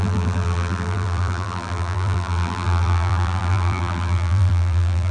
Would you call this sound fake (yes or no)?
yes